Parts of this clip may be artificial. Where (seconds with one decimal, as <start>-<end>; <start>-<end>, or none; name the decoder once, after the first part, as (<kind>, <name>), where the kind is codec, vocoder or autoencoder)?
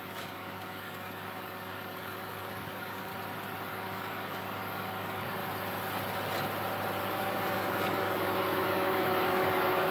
0.0-3.1 (codec, DAC); 3.7-5.4; 7.0-9.9